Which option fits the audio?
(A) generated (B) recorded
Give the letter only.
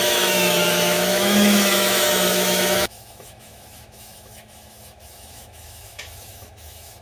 A